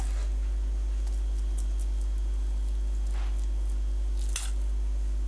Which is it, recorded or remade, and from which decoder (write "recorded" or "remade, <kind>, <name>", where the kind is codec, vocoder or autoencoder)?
recorded